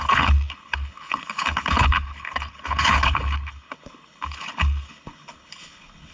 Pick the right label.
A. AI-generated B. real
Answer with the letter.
A